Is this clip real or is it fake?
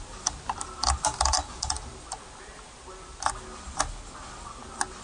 real